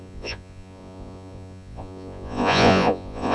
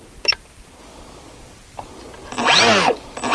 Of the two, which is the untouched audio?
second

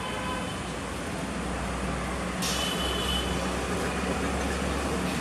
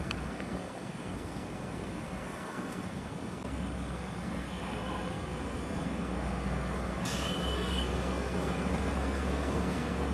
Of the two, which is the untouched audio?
first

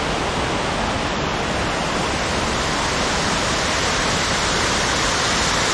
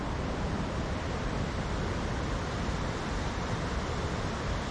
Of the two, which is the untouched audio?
first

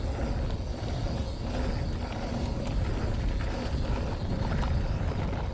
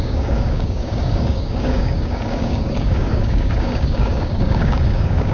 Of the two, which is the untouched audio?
first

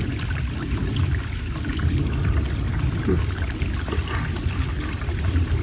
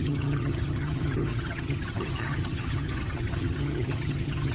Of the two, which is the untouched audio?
first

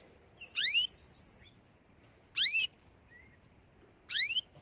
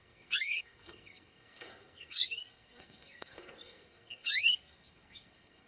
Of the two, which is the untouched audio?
first